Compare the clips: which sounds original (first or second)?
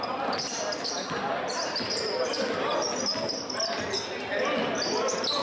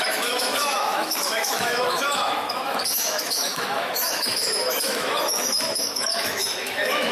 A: first